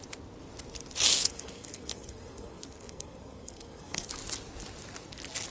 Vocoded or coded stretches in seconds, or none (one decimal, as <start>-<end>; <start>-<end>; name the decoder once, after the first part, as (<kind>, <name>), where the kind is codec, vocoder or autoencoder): 1.1-4.1 (codec, SNAC)